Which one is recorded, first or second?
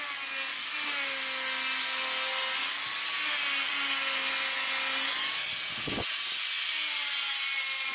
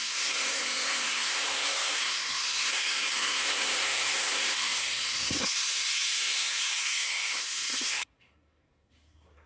first